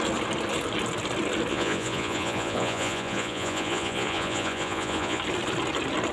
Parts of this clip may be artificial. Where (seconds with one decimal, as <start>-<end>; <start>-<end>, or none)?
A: 1.5-5.2